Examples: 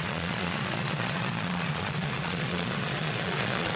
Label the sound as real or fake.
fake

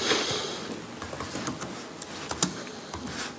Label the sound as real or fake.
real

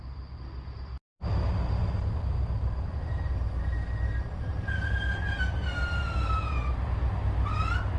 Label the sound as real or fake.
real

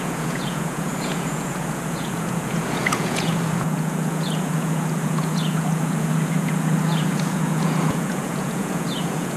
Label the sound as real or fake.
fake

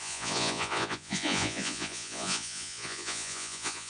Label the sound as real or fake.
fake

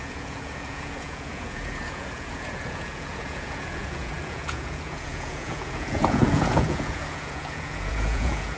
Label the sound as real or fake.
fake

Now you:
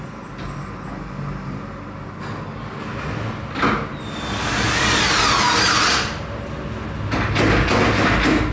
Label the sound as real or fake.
real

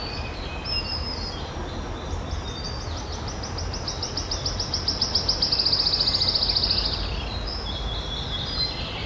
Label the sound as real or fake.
real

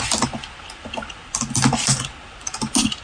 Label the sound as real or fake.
real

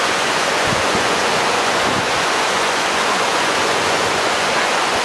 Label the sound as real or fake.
fake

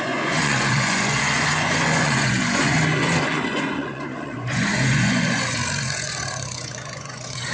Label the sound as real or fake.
fake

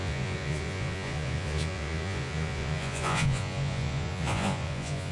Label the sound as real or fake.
fake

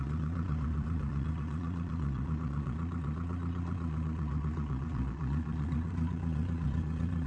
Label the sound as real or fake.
fake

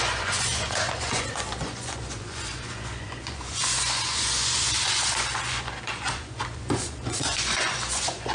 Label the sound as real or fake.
fake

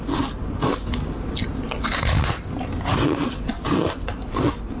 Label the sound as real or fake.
real